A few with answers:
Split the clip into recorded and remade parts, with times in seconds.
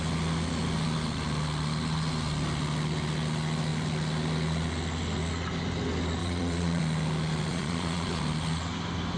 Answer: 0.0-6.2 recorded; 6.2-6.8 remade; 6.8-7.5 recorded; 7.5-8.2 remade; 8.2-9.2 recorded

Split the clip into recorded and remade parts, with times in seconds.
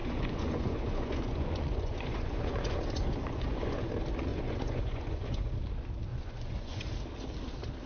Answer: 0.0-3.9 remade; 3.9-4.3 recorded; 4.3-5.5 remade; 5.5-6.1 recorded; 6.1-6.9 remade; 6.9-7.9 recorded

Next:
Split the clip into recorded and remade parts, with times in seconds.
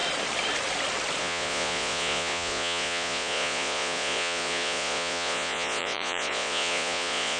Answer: 0.0-1.2 recorded; 1.2-7.4 remade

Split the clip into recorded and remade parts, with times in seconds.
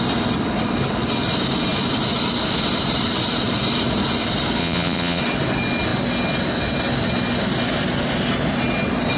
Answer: 0.0-4.6 recorded; 4.6-5.2 remade; 5.2-9.2 recorded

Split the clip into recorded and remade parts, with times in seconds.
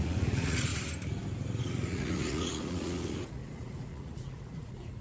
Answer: 0.0-0.7 remade; 0.7-1.6 recorded; 1.6-5.0 remade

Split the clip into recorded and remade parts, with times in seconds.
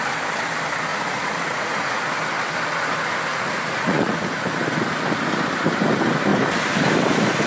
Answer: 0.0-0.9 recorded; 0.9-2.0 remade; 2.0-3.3 recorded; 3.3-4.3 remade; 4.3-7.5 recorded